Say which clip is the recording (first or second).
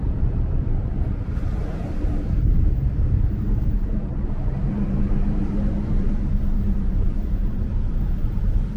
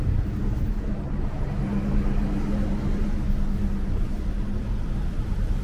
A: second